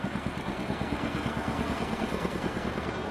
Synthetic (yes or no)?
yes